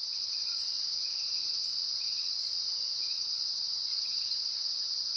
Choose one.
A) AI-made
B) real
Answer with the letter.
A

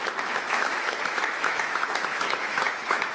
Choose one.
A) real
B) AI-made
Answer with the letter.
B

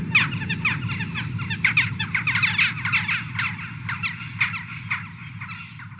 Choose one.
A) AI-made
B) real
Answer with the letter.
B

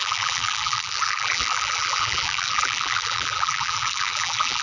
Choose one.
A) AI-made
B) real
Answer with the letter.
A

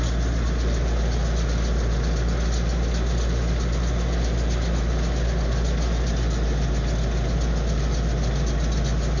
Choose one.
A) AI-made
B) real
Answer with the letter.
B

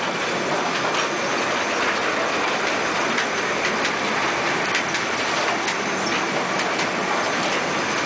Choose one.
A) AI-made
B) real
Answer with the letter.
B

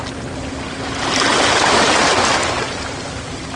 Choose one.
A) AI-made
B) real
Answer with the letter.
B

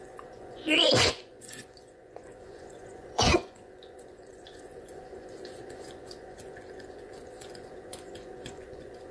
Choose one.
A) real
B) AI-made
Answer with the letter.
B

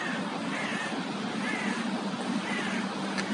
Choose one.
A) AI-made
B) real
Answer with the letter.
B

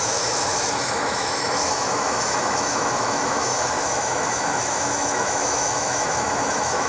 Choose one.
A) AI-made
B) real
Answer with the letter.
A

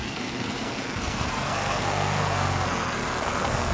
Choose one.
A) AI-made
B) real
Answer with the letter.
A